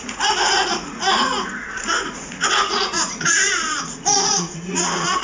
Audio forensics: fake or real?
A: fake